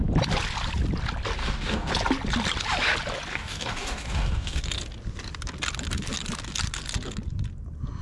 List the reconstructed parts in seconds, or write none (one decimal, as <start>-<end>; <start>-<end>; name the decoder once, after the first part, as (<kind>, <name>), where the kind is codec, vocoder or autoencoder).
1.4-1.9 (codec, DAC); 3.3-4.6